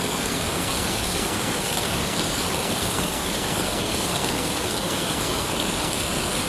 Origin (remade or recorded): remade